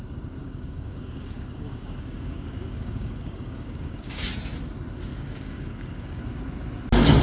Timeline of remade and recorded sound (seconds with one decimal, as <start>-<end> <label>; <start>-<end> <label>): 0.0-0.4 recorded; 0.4-4.3 remade; 4.3-5.1 recorded; 5.1-6.2 remade; 6.2-7.2 recorded